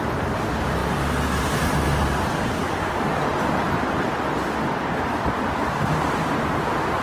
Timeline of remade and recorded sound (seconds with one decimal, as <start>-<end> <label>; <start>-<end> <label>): 0.0-7.0 recorded